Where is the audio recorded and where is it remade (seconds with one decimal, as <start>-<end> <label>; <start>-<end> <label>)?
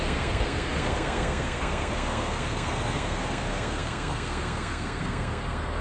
0.0-5.8 remade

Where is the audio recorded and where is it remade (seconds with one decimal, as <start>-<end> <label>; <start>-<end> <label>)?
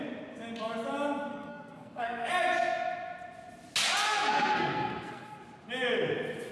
0.0-1.3 recorded; 1.3-2.3 remade; 2.3-4.1 recorded; 4.1-5.4 remade; 5.4-6.5 recorded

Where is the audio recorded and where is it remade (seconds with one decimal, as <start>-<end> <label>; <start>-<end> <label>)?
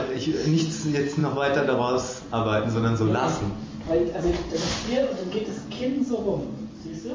0.0-7.1 recorded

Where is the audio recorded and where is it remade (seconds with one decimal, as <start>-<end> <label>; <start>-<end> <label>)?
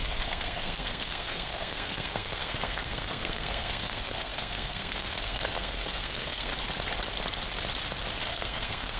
0.0-6.5 remade; 6.5-8.3 recorded; 8.3-9.0 remade